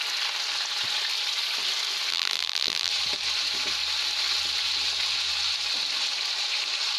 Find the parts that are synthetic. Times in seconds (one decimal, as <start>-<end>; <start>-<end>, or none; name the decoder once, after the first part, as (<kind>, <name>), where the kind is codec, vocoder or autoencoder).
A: 2.1-2.9 (vocoder, BigVGAN v2)